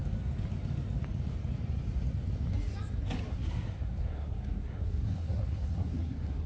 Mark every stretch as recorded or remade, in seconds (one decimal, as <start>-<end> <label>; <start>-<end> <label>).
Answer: 0.0-3.3 recorded; 3.3-6.5 remade